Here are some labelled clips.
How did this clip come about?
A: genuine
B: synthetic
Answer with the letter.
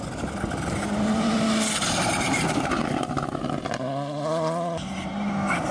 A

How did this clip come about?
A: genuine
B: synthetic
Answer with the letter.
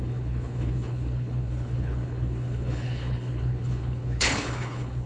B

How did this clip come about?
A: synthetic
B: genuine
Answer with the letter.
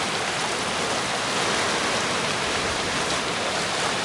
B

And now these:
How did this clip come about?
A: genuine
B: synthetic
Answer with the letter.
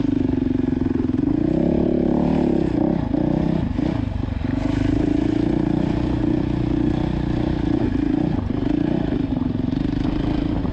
A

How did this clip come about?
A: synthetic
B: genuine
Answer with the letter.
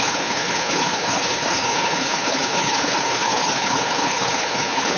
A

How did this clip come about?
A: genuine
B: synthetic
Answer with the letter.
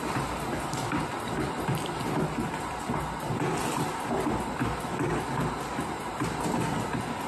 A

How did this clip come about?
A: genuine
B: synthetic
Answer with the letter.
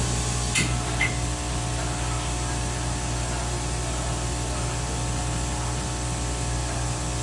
A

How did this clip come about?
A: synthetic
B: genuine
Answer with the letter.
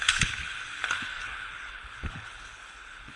A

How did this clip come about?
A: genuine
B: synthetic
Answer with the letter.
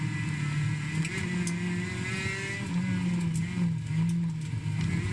A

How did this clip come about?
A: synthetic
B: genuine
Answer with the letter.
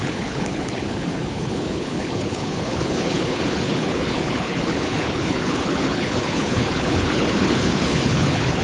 A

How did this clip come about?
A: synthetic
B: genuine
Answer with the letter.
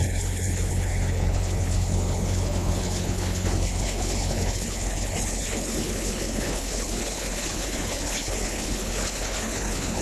A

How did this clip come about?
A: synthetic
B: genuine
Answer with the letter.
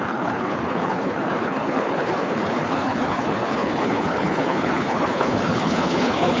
A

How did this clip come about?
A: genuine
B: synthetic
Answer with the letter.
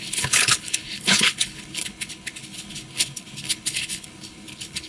B